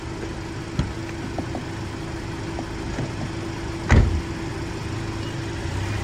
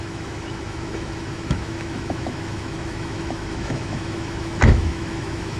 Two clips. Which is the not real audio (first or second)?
second